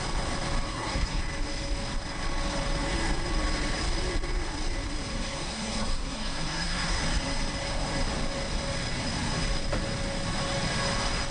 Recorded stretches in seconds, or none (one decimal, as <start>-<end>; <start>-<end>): 0.0-0.7; 1.2-5.1; 7.0-11.3